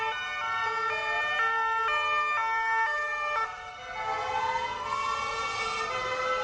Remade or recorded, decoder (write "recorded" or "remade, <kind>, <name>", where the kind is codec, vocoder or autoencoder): recorded